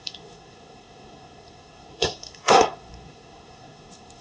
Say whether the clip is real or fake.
fake